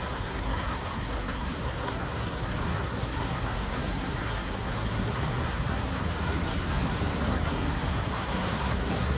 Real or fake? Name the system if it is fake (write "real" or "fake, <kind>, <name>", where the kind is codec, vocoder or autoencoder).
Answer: fake, codec, SNAC